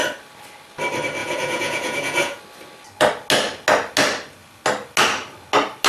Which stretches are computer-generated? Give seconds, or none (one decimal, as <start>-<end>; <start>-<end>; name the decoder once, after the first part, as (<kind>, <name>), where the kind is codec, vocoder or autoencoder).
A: 1.2-2.4 (vocoder, Vocos)